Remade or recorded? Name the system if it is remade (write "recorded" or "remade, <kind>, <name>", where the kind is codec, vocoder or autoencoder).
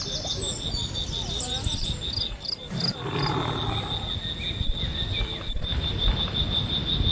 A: recorded